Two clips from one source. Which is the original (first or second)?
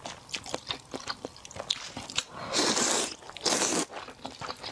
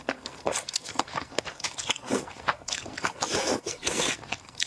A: first